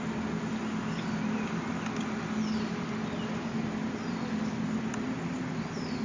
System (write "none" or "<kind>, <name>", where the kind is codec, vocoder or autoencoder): none